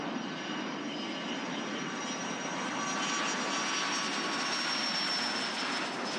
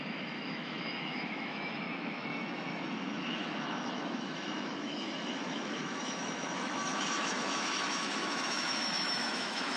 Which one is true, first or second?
first